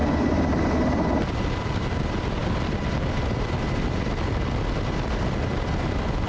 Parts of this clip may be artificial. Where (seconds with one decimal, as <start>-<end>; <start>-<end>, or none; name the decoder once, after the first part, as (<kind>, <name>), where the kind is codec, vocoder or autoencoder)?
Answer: none